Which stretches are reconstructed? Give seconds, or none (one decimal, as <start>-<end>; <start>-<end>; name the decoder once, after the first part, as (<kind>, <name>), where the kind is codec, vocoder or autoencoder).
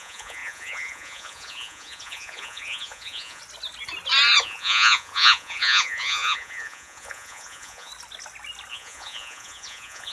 0.0-3.4 (vocoder, Vocos); 4.4-7.9; 8.7-10.1